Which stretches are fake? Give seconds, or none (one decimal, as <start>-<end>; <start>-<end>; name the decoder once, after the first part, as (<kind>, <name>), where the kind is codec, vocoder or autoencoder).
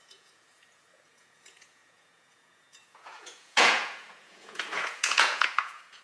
0.0-6.0 (vocoder, Vocos)